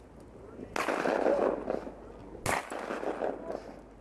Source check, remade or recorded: recorded